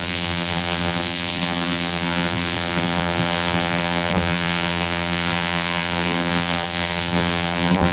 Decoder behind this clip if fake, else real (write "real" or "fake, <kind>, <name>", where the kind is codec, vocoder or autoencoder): fake, vocoder, BigVGAN v2